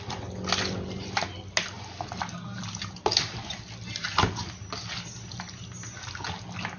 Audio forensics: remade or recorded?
recorded